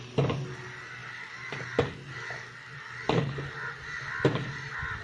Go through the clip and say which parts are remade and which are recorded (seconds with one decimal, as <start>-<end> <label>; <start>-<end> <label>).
0.0-5.0 recorded